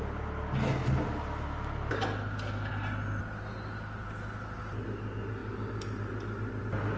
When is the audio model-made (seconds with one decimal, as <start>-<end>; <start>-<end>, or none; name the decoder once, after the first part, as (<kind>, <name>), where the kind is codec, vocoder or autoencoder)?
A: none